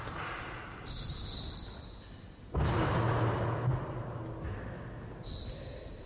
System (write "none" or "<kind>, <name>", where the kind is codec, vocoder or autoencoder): none